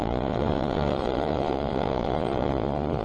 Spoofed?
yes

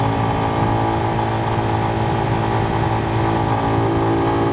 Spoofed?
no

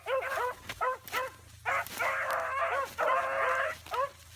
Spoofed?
no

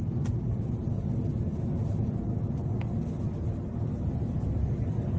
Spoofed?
no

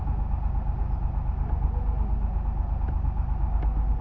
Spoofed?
no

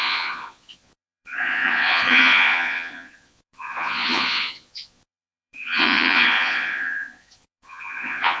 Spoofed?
yes